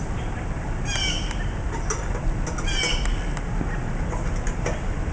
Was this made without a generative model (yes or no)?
yes